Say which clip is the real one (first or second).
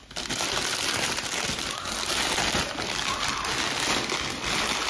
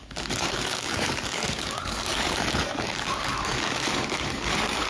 first